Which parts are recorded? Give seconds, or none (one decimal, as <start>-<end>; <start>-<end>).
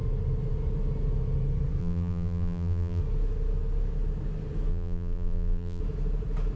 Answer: 0.0-1.8; 3.0-4.7; 5.8-6.6